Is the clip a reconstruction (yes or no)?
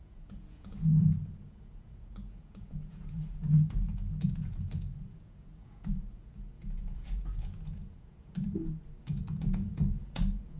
yes